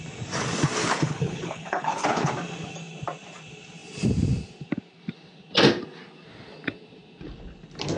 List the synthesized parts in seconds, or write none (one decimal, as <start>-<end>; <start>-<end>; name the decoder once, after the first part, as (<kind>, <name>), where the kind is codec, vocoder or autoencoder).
0.8-2.3 (codec, HILCodec)